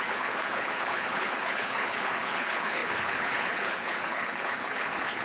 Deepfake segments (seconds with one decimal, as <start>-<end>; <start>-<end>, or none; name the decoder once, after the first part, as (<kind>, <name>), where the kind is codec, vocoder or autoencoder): 0.0-5.2 (codec, HILCodec)